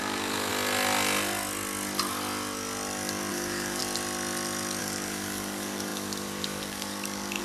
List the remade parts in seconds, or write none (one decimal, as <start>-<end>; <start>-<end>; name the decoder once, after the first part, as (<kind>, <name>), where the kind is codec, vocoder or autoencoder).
0.0-0.5 (codec, DAC); 3.3-3.8; 4.8-7.4